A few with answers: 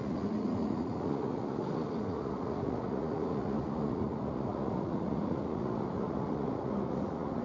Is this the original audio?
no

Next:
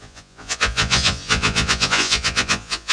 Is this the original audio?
no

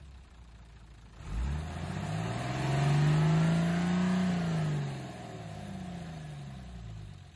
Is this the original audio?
yes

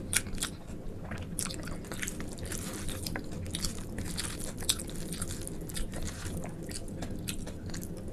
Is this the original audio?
yes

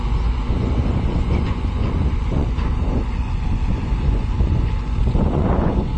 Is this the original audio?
no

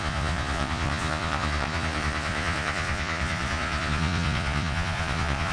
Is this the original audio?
no